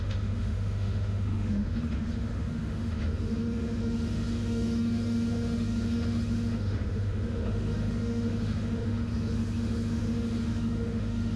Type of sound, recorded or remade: remade